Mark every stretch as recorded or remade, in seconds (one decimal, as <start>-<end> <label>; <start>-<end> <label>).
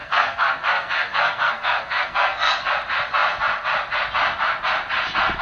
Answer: 0.0-2.7 remade; 2.7-5.4 recorded